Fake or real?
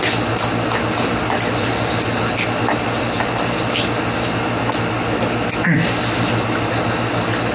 real